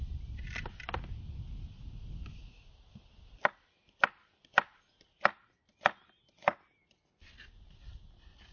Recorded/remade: recorded